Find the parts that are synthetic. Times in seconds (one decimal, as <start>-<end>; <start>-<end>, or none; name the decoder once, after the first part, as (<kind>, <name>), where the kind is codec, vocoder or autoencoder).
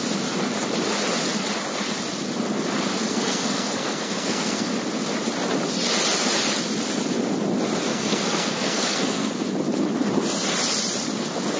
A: 3.0-4.7 (codec, SNAC); 7.9-9.3